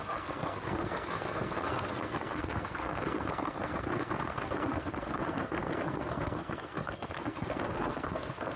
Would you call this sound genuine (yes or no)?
no